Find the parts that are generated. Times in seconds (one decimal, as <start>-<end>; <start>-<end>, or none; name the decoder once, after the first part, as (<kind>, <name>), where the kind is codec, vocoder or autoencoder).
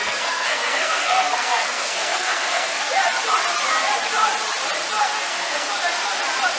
0.0-2.9 (codec, SNAC); 5.0-5.7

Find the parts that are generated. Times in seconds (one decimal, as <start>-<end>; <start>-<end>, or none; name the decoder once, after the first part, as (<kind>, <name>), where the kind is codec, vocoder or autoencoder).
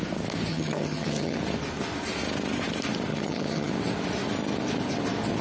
0.5-1.4 (vocoder, HiFi-GAN); 3.1-3.7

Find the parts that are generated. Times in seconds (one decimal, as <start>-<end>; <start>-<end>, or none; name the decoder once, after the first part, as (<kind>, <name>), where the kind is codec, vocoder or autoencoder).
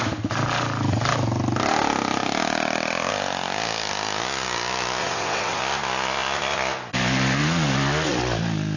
5.0-5.6 (vocoder, WaveNeXt)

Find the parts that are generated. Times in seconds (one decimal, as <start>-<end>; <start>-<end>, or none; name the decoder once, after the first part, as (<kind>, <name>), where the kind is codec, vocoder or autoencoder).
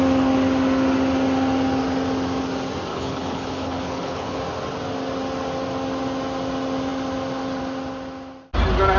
2.9-4.4 (codec, HILCodec)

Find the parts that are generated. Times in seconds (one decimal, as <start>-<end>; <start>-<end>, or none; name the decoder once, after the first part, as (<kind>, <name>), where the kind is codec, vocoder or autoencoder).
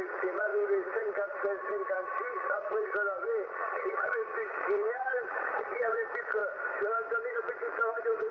0.0-6.4 (vocoder, Vocos); 7.3-8.3